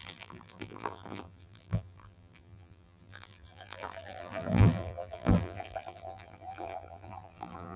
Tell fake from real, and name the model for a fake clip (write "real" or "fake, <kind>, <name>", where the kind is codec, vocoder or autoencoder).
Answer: fake, vocoder, BigVGAN v2